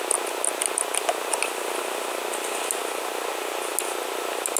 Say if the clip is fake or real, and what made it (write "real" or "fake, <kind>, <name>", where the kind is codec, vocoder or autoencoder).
real